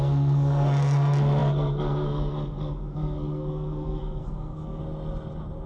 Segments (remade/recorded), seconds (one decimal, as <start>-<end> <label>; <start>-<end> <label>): 0.0-4.8 remade; 4.8-5.7 recorded